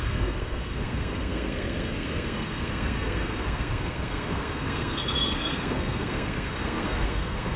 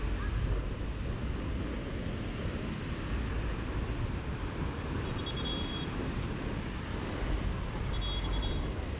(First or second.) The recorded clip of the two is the second